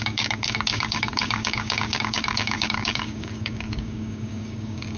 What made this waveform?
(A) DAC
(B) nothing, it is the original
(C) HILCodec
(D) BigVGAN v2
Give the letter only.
A